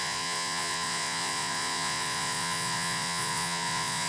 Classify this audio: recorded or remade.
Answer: remade